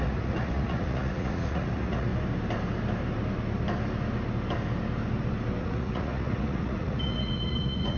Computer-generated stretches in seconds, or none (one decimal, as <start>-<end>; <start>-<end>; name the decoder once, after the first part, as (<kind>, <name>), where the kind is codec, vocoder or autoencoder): 0.0-2.1 (vocoder, Vocos); 5.6-8.0